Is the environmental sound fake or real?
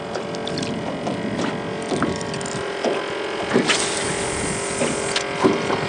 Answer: real